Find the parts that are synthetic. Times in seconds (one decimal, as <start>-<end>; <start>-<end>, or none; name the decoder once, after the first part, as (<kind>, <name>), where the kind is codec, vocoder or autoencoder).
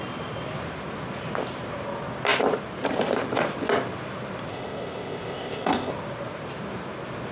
4.5-5.9 (codec, ZipCodec)